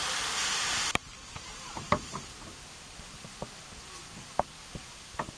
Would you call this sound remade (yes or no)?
no